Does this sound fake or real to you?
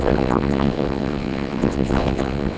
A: fake